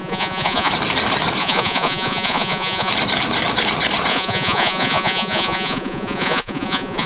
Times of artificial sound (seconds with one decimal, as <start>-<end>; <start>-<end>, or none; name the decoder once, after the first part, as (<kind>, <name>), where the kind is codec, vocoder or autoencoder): 0.0-0.7 (vocoder, Vocos); 1.4-2.9; 4.1-7.1